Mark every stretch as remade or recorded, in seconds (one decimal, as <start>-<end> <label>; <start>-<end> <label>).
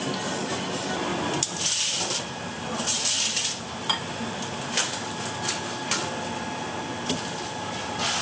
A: 0.0-8.2 recorded